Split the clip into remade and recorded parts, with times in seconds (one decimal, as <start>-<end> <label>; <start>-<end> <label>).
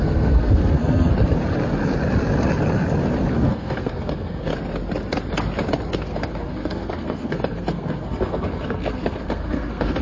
0.0-1.1 remade; 1.1-3.3 recorded; 3.3-4.5 remade; 4.5-5.9 recorded; 5.9-10.0 remade